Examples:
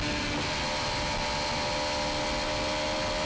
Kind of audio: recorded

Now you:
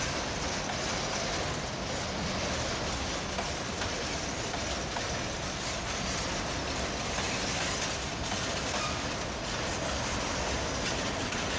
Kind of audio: recorded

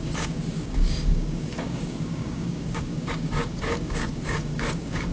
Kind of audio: remade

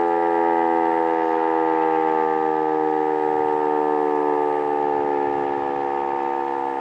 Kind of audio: recorded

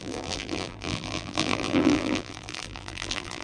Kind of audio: remade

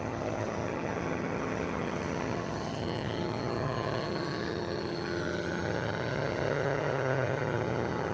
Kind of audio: remade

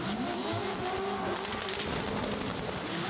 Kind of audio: recorded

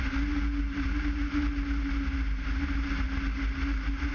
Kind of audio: recorded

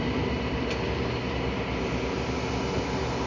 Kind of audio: recorded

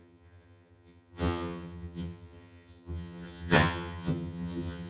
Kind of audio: remade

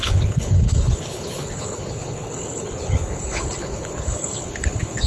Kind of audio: remade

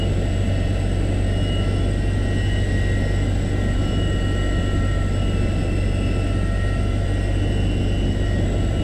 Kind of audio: recorded